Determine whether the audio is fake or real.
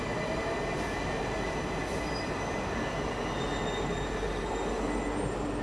real